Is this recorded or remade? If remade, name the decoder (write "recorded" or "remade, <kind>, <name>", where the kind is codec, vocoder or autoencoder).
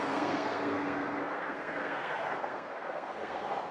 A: remade, codec, SNAC